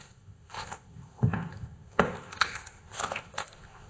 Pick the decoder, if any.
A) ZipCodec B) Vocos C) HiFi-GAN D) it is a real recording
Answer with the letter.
A